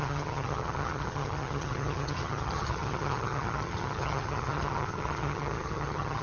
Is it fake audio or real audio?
fake